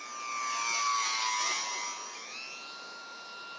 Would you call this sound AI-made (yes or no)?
no